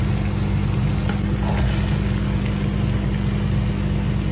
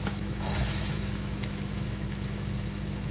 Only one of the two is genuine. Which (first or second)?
first